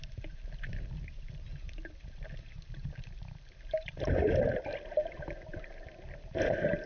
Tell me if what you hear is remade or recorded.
remade